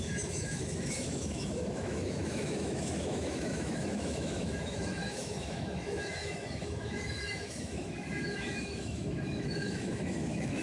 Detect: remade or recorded remade